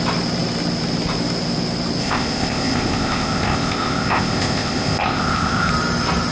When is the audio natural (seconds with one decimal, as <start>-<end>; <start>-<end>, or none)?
0.0-2.0; 5.7-6.3